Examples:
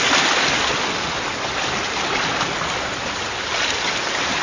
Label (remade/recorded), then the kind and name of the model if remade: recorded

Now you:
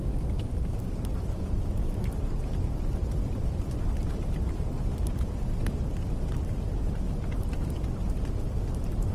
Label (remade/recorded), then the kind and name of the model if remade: recorded